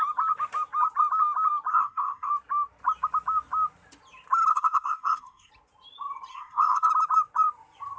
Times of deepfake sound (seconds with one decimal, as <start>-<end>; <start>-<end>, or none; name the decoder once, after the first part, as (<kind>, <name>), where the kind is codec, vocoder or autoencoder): 1.7-2.3 (codec, SNAC); 4.5-5.5; 6.3-6.9